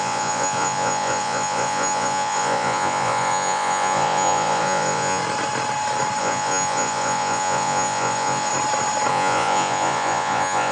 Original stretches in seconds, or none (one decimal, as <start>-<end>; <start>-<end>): 5.2-6.2; 8.5-9.1